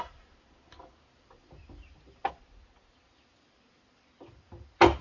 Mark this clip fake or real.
real